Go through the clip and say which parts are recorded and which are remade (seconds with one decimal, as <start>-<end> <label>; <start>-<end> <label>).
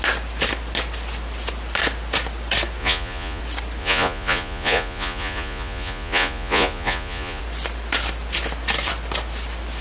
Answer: 0.0-2.8 recorded; 2.8-3.4 remade; 3.4-3.8 recorded; 3.8-7.4 remade; 7.4-9.8 recorded